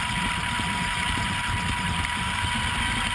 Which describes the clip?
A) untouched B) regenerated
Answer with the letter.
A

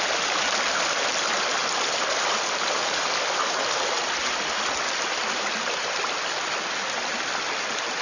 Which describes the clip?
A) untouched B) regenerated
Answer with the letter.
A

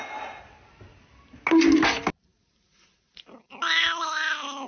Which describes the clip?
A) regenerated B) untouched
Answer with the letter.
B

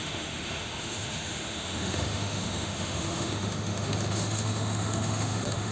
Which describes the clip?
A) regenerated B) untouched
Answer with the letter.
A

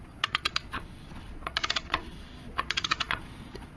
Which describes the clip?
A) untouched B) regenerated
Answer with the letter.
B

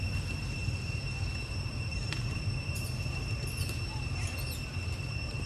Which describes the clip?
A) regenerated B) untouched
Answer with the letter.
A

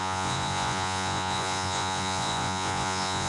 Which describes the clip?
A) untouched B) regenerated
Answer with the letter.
B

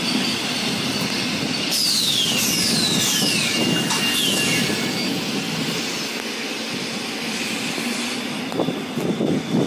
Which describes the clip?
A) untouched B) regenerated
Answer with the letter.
A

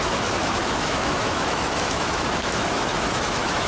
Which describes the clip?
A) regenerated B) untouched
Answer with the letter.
A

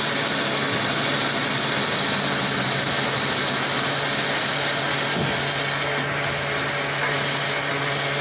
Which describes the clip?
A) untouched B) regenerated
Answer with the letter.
A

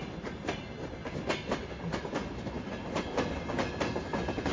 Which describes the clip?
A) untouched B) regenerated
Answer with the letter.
A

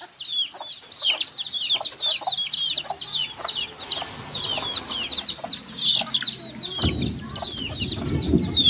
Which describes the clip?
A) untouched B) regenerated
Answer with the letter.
A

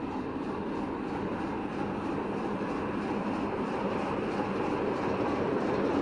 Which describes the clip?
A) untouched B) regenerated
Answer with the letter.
A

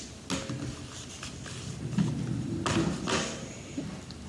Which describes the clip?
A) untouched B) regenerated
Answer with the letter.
A